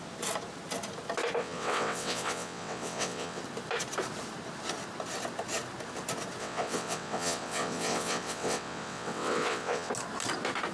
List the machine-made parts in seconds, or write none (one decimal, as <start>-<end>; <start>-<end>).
1.4-3.4; 6.4-9.9